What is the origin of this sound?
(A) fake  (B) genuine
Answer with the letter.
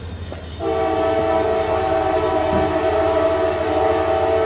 B